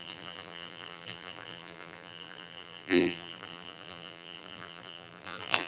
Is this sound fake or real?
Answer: fake